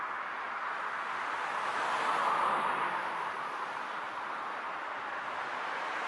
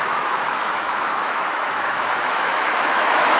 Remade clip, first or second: second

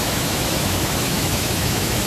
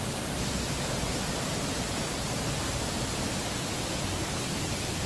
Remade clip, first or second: first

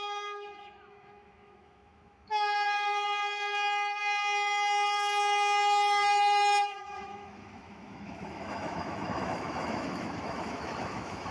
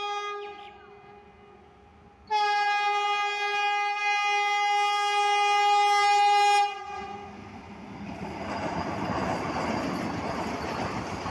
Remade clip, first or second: first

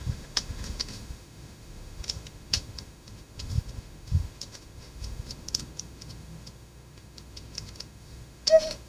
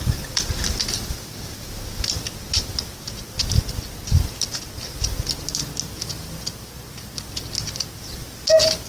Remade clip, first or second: first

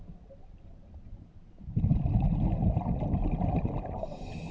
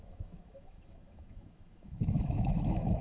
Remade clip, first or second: second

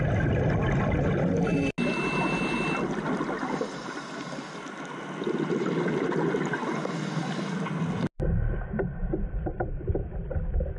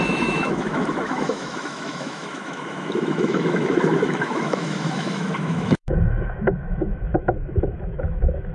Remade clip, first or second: second